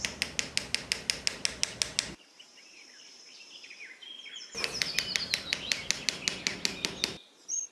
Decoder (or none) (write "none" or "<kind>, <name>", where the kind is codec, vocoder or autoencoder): none